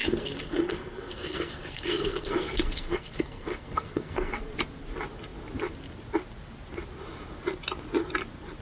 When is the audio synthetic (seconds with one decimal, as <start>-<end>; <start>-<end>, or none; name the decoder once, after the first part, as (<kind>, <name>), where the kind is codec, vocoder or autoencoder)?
0.0-4.4 (codec, SNAC)